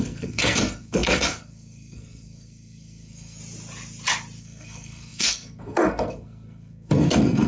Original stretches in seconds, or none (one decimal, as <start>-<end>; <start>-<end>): 3.4-4.4